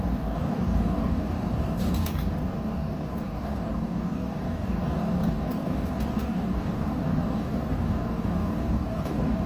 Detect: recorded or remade remade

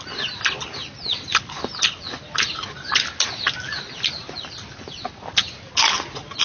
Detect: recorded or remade recorded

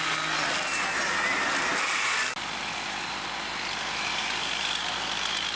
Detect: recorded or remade recorded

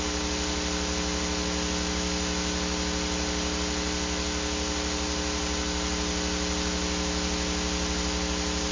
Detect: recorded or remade recorded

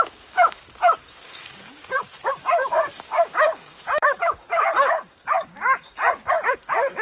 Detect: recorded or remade remade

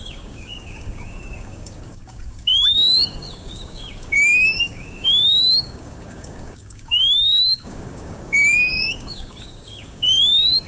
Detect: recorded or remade remade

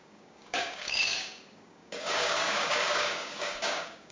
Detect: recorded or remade remade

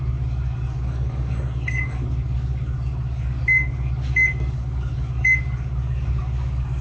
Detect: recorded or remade remade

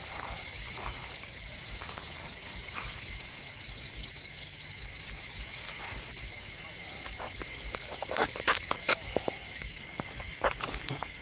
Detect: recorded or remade remade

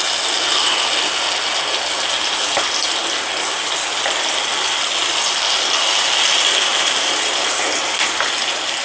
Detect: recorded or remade recorded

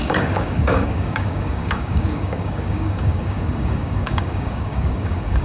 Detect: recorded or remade remade